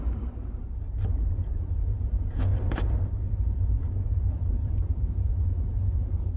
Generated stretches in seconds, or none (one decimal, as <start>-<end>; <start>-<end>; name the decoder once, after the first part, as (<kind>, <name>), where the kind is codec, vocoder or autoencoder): 1.1-2.0 (vocoder, BigVGAN v2); 2.5-6.4